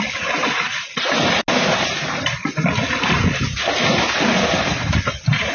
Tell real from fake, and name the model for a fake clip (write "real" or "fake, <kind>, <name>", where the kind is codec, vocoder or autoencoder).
real